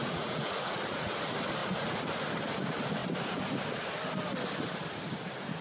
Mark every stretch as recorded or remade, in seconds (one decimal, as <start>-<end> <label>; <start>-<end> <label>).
0.0-1.2 remade; 1.2-1.6 recorded; 1.6-2.1 remade; 2.1-5.6 recorded